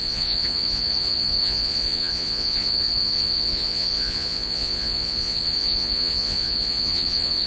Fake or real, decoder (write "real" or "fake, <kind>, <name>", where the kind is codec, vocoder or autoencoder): fake, vocoder, Vocos